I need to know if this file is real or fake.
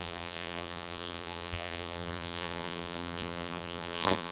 fake